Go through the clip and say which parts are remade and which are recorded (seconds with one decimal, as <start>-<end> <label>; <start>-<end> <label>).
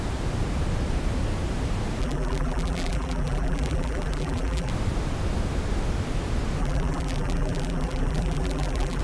0.0-2.0 recorded; 2.0-4.7 remade; 4.7-6.6 recorded; 6.6-9.0 remade